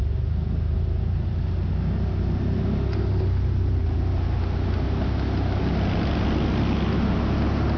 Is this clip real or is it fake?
real